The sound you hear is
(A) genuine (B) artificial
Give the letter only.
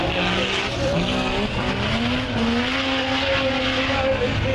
A